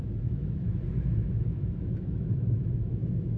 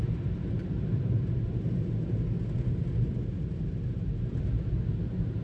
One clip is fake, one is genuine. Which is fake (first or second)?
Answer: first